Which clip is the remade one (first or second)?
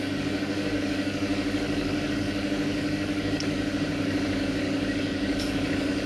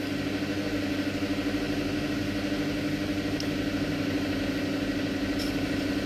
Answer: first